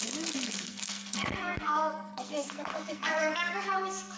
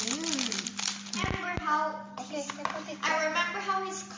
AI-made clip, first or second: first